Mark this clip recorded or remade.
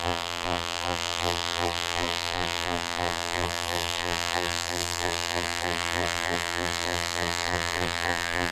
remade